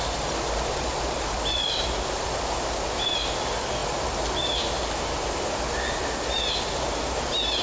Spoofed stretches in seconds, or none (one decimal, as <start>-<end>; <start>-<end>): none